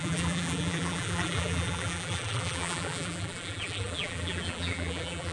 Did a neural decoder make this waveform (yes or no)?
yes